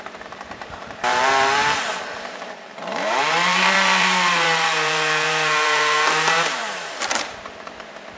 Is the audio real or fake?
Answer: fake